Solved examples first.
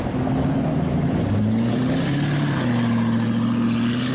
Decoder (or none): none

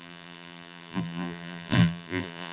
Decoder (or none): vocoder, BigVGAN v2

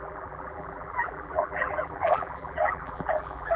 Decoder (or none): vocoder, BigVGAN v2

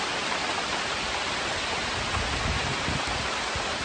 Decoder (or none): none